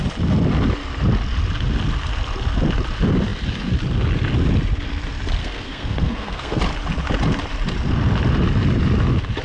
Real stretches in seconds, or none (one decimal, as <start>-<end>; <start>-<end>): 0.0-5.4; 6.6-9.4